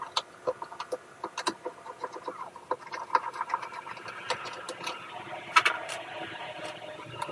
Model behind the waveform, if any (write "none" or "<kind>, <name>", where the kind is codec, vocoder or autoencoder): none